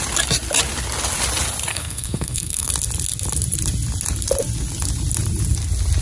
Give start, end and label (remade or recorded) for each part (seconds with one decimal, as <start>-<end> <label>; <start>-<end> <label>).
0.0-1.7 recorded; 1.7-2.7 remade; 2.7-6.0 recorded